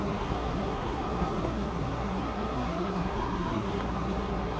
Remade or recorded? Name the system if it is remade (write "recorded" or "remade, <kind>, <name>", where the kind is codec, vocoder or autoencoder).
remade, codec, SNAC